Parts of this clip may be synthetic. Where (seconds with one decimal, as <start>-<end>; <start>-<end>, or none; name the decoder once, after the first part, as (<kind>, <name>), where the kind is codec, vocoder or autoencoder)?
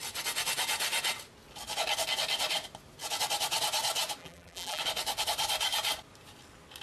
4.2-4.8 (vocoder, BigVGAN v2)